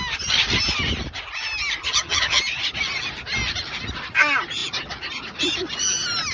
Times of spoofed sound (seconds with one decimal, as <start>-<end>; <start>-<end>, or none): 1.8-2.4